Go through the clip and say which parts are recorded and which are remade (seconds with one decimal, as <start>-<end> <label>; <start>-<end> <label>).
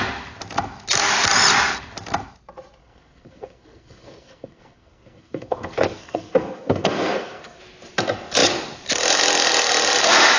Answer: 0.0-2.8 recorded; 2.8-7.6 remade; 7.6-10.4 recorded